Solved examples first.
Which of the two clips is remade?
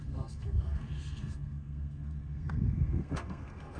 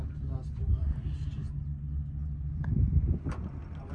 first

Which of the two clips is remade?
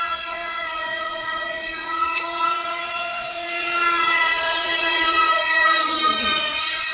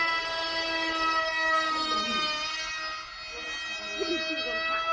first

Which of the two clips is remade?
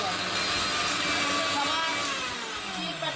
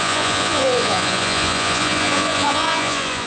second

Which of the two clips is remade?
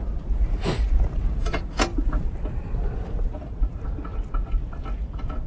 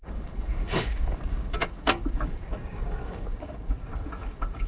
second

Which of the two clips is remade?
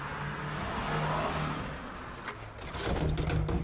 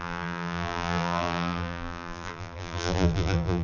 second